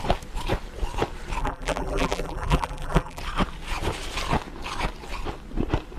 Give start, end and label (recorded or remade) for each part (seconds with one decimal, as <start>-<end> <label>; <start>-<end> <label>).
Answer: 0.0-1.4 recorded; 1.4-3.2 remade; 3.2-6.0 recorded